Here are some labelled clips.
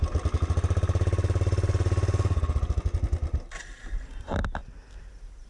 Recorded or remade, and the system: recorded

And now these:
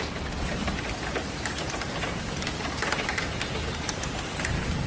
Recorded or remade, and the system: recorded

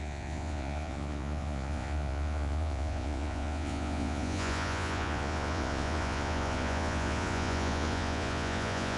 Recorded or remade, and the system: remade, vocoder, Vocos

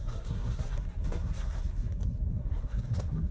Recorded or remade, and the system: remade, codec, SNAC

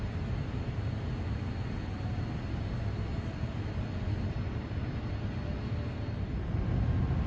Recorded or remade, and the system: recorded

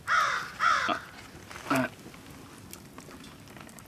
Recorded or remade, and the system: recorded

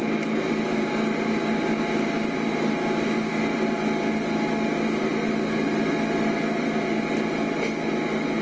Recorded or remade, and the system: recorded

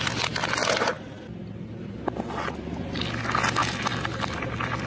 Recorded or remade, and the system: recorded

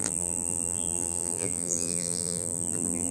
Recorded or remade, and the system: remade, vocoder, BigVGAN v2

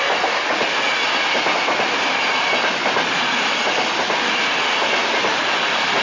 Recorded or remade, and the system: recorded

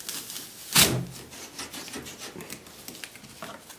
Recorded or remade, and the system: recorded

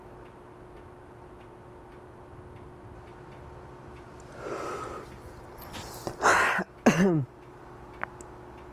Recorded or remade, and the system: recorded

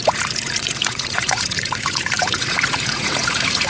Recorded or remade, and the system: remade, vocoder, Vocos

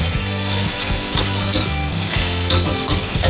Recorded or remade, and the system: remade, codec, SNAC